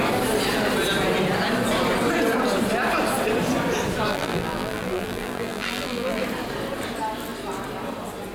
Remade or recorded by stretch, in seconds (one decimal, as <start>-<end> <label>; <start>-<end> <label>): 0.0-4.1 recorded; 4.1-6.2 remade; 6.2-8.3 recorded